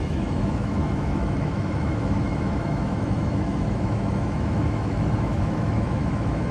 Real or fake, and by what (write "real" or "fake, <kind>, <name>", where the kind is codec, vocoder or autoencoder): fake, autoencoder, DAC-VAE